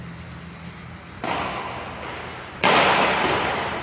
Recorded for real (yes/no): yes